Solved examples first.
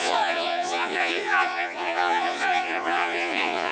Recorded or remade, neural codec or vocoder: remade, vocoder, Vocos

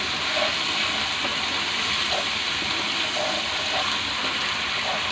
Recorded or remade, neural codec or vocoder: recorded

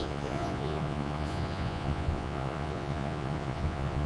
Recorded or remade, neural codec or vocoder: remade, vocoder, Vocos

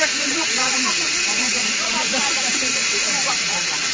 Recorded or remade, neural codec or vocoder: remade, vocoder, Vocos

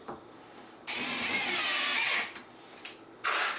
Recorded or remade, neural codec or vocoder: recorded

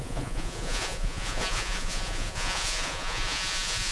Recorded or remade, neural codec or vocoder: remade, vocoder, Vocos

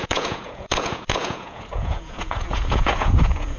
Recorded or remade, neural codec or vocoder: remade, vocoder, Vocos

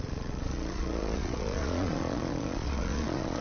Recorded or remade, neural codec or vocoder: remade, vocoder, Vocos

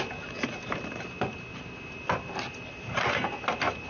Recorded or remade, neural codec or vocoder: recorded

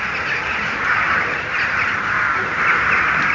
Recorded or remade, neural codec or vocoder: recorded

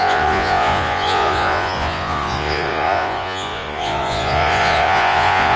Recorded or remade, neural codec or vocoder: remade, vocoder, Vocos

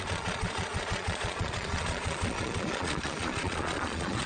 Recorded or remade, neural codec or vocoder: remade, vocoder, Vocos